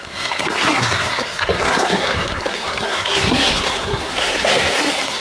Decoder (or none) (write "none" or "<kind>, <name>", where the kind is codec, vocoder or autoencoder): codec, SNAC